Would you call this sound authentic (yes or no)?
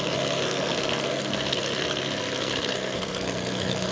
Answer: no